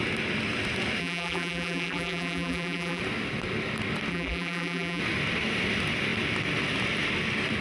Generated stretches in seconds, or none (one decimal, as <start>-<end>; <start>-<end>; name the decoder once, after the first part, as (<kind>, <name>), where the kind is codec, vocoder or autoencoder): 1.0-3.0 (vocoder, BigVGAN v2); 4.1-5.0